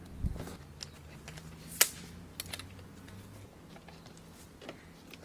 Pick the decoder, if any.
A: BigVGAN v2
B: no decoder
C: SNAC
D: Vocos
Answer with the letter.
B